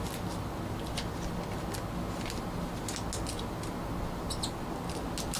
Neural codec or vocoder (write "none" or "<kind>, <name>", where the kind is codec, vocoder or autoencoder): none